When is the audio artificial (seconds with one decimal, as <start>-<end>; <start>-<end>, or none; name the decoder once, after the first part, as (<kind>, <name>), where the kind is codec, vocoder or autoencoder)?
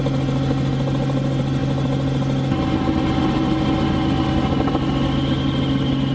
none